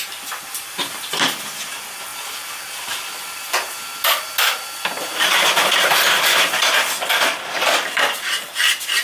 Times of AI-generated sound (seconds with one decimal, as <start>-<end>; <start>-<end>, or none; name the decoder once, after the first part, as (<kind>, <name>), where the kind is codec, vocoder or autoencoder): none